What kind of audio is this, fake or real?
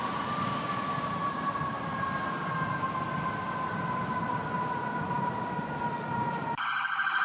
real